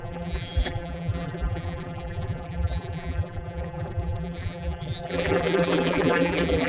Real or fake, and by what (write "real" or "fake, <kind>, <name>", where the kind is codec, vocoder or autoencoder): fake, vocoder, BigVGAN v2